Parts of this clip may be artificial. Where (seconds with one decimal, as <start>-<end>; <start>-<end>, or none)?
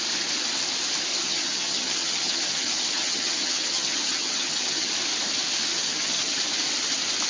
1.1-4.9; 5.7-6.4